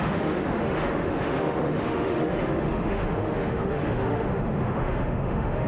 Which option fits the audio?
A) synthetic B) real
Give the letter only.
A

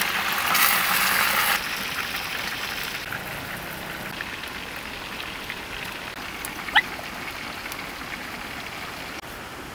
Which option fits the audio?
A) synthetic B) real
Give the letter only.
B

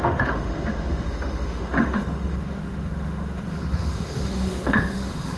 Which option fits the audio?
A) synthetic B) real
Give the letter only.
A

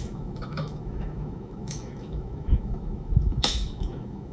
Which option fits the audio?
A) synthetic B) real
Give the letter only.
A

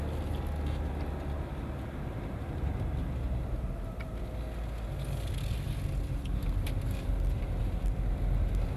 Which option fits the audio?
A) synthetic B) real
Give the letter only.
B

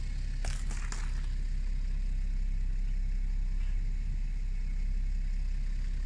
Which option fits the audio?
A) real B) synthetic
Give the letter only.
A